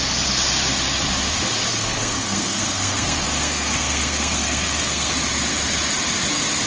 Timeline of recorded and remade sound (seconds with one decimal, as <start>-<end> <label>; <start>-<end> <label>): 0.0-1.7 recorded; 1.7-5.1 remade; 5.1-6.7 recorded